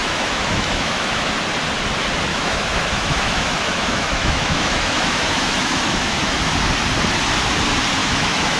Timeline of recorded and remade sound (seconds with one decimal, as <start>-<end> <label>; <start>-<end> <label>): 0.0-1.3 remade; 1.3-2.3 recorded; 2.3-6.4 remade; 6.4-8.0 recorded; 8.0-8.6 remade